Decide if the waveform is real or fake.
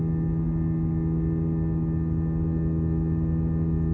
real